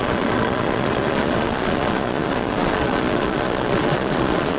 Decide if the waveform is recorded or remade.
remade